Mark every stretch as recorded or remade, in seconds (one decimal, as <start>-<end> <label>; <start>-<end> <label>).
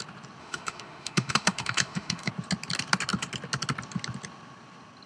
0.0-0.4 recorded; 0.4-2.3 remade; 2.3-5.1 recorded